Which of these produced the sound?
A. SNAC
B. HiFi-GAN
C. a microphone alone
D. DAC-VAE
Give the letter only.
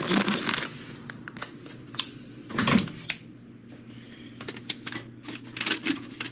C